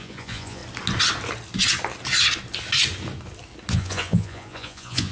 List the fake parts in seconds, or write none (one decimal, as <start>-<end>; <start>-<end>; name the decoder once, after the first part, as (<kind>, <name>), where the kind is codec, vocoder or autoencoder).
0.0-0.6 (vocoder, Vocos); 3.7-5.1